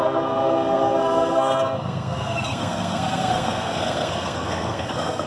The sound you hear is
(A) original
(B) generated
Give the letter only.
B